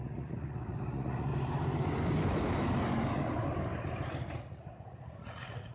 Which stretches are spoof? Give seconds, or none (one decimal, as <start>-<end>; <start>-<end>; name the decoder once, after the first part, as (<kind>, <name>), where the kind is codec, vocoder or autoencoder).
0.0-1.3 (vocoder, Vocos); 4.4-5.7